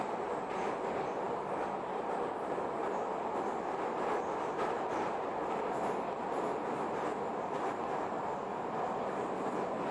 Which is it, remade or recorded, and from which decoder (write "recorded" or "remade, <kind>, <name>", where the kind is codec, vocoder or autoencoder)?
recorded